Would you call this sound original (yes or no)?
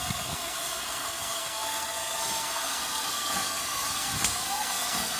no